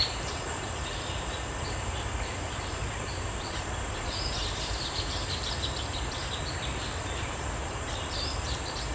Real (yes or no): no